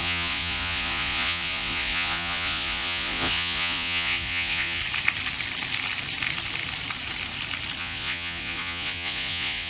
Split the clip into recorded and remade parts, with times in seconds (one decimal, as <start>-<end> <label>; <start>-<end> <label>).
0.0-4.8 remade; 4.8-7.8 recorded; 7.8-9.7 remade